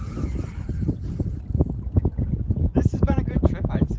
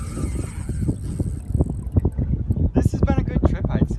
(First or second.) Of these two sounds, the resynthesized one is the first